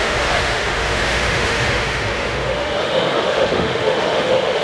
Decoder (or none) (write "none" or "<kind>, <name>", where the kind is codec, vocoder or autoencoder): autoencoder, DAC-VAE